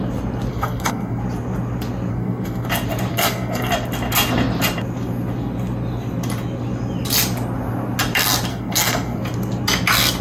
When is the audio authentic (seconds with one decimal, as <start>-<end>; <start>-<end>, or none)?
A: 0.0-0.5; 1.2-2.1; 2.7-3.1; 3.7-8.5; 9.2-10.2

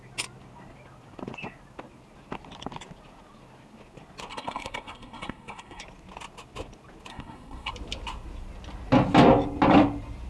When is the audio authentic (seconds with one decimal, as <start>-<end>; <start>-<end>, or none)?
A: 0.0-4.3; 5.8-7.1; 7.7-10.3

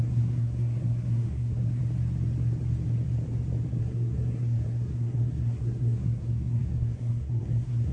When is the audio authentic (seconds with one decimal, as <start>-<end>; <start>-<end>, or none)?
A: 1.8-3.8

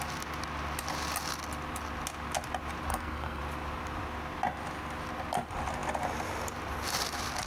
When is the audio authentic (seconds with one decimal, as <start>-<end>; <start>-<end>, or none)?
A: 0.0-2.9; 3.4-7.5